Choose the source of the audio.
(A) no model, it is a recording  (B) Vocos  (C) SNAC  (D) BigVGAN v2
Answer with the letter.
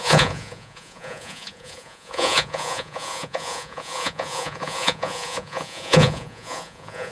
B